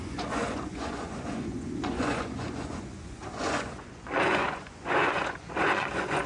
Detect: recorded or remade remade